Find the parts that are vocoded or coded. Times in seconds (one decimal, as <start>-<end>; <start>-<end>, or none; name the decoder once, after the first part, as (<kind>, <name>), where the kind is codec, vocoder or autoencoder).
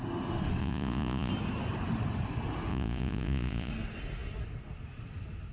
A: 0.6-1.3 (vocoder, Vocos); 2.7-3.7